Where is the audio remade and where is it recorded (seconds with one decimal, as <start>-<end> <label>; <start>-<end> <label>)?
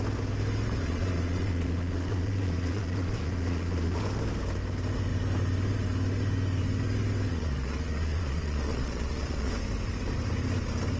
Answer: 0.0-0.8 recorded; 0.8-4.0 remade; 4.0-7.3 recorded; 7.3-9.5 remade; 9.5-11.0 recorded